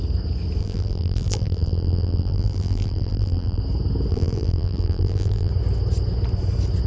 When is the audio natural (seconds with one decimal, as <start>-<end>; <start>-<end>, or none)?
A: 0.0-0.6; 3.6-4.1; 5.5-6.9